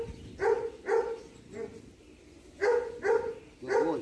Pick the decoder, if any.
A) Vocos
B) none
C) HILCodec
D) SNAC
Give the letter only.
B